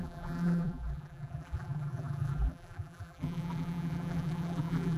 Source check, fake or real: fake